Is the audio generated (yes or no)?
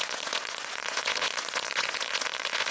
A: yes